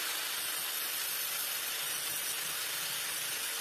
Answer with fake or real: real